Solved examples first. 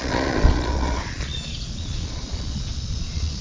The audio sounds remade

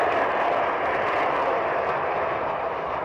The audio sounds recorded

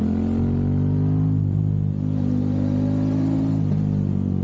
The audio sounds recorded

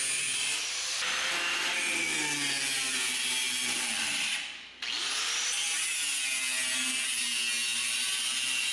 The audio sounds recorded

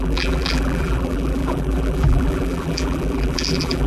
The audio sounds remade